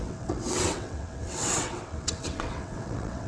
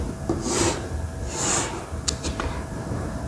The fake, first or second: first